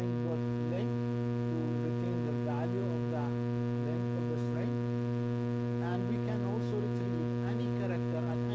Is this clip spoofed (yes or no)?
no